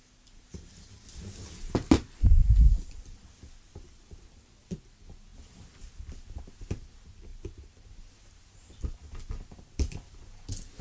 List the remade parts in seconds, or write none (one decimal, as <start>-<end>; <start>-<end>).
none